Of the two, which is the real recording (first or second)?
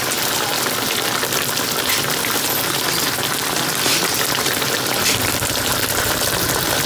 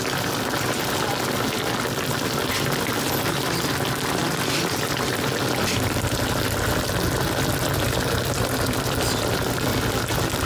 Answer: second